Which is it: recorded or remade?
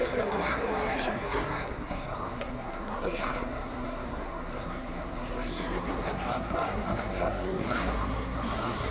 remade